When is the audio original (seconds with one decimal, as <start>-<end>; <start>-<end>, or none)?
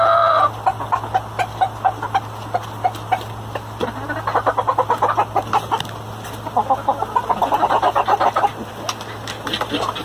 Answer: 0.0-10.0